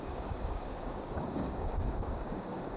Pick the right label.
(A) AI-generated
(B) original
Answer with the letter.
A